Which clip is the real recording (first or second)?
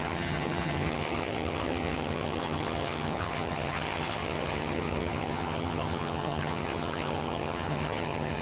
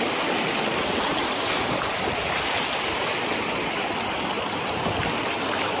second